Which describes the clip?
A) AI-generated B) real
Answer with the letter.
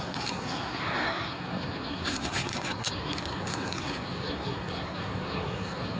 A